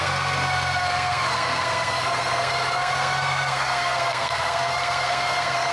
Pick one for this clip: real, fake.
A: fake